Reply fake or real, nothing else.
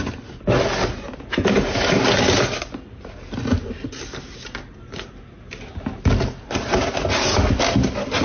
real